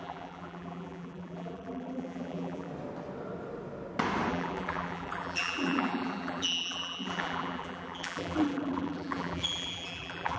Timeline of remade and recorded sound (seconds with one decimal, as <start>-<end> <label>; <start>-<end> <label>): 0.0-2.7 remade; 2.7-4.3 recorded; 4.3-10.4 remade